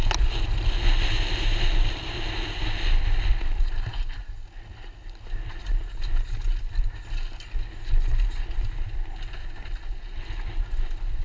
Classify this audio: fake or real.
real